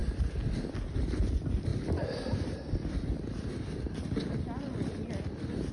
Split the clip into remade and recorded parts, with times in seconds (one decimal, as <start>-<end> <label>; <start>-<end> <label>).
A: 0.0-5.7 recorded